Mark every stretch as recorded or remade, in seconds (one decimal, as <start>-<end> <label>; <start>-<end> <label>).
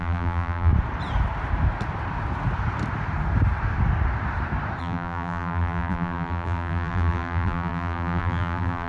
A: 0.0-0.7 remade; 0.7-4.8 recorded; 4.8-8.9 remade